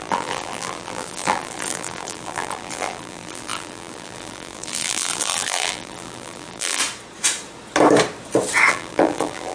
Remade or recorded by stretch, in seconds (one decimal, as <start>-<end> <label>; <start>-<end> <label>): 0.0-6.8 remade; 6.8-8.7 recorded; 8.7-9.5 remade